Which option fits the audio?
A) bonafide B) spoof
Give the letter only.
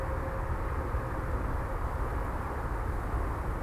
A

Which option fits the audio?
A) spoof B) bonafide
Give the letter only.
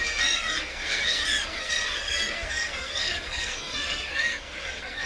A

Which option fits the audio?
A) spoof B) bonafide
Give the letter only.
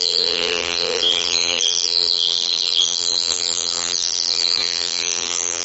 A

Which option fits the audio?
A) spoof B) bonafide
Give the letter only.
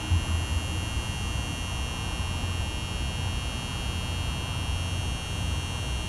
B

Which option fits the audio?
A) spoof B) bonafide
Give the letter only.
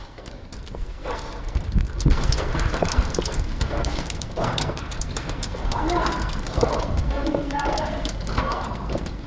A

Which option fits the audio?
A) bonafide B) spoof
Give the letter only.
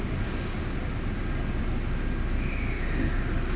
A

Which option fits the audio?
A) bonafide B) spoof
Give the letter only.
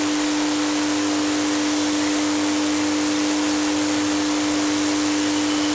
A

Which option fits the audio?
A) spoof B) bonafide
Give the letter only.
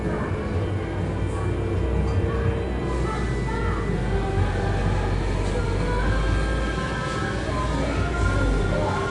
B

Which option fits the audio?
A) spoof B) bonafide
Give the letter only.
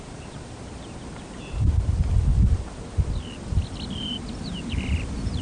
B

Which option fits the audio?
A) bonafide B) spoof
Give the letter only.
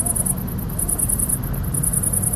A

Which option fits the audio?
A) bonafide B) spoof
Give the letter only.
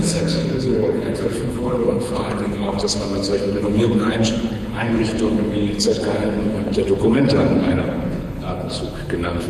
B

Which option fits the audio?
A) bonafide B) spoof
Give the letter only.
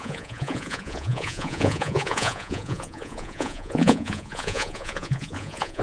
B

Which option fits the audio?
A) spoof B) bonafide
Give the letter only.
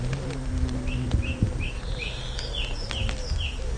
B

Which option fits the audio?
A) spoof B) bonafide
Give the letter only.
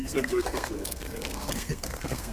A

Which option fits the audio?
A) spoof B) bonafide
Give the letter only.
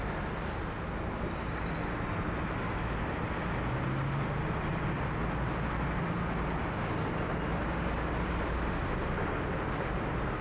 B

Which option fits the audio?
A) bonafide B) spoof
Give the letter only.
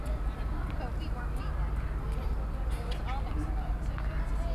A